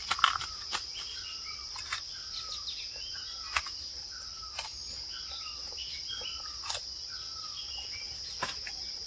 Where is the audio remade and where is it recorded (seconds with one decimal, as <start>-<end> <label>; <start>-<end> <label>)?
0.0-9.1 recorded